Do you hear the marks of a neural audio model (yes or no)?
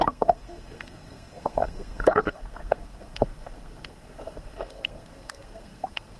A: yes